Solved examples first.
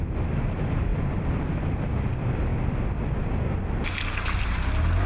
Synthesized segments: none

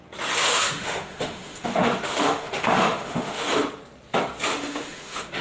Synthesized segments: 0.4-3.6 (autoencoder, DAC-VAE); 4.5-5.4

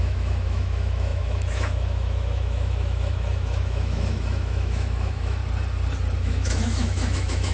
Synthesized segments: 0.0-5.4 (autoencoder, DAC-VAE); 6.2-7.5